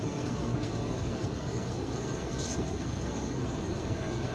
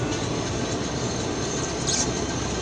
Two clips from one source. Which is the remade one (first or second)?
first